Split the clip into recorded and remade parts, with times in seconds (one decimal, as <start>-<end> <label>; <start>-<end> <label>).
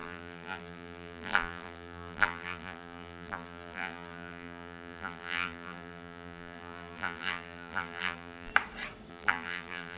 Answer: 0.0-8.5 remade; 8.5-9.1 recorded; 9.1-10.0 remade